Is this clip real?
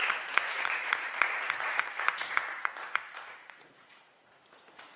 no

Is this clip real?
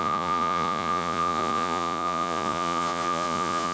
no